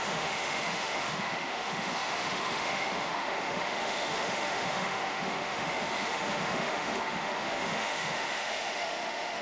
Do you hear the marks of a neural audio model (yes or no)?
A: yes